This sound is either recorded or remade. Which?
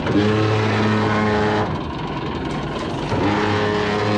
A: recorded